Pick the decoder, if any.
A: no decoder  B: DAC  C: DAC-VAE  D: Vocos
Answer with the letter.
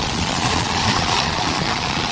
D